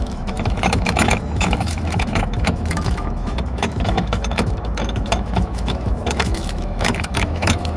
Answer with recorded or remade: remade